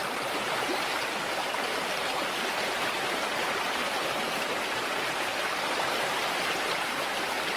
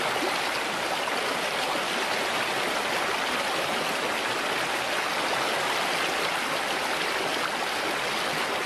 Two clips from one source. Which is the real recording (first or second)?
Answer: second